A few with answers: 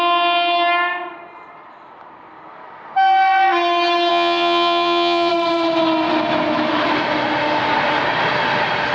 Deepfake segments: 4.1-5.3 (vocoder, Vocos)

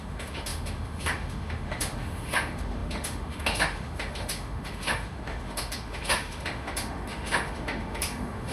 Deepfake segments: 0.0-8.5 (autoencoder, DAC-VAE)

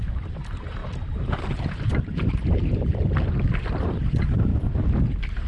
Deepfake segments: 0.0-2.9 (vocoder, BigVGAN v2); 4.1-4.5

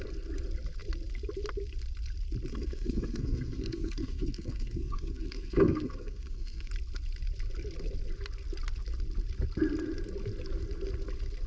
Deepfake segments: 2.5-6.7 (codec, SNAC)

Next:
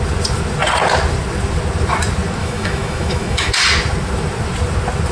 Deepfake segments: 2.4-3.5 (autoencoder, DAC-VAE)

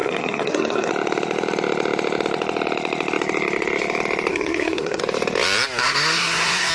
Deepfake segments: 0.0-0.9 (codec, SNAC); 4.3-5.0; 5.8-6.7

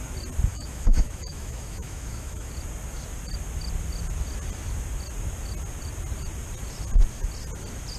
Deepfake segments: 0.5-2.5 (autoencoder, DAC-VAE)

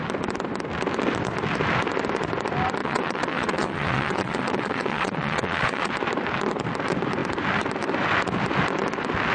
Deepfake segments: 2.8-5.9 (vocoder, WaveNeXt)